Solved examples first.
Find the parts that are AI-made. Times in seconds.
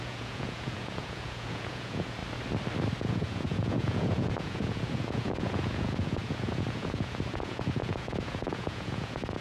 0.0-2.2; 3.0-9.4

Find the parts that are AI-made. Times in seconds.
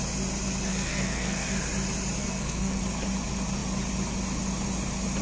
0.7-1.5; 2.2-2.8